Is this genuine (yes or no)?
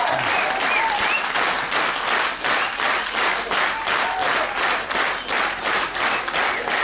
yes